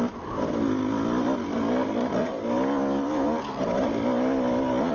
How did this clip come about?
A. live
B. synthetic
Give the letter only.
A